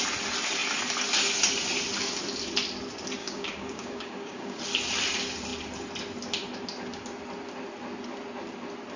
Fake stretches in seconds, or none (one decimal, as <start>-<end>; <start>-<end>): 3.2-4.6